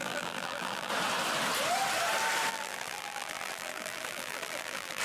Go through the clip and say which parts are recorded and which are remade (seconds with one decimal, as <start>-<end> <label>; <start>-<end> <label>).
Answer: 0.0-0.9 remade; 0.9-2.5 recorded; 2.5-5.0 remade